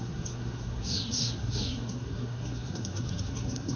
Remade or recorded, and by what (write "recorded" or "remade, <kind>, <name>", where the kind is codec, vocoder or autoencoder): remade, codec, SNAC